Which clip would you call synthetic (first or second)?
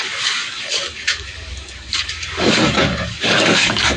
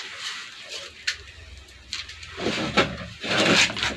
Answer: first